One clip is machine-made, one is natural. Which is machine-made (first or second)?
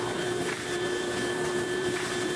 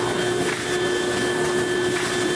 first